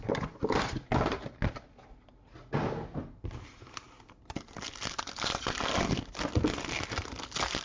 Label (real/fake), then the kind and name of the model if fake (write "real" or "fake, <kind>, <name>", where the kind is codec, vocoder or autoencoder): real